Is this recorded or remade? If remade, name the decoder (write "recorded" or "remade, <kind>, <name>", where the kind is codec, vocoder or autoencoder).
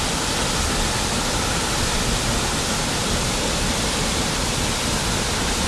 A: recorded